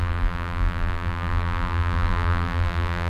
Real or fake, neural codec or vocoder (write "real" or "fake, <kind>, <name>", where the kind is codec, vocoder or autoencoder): fake, vocoder, BigVGAN v2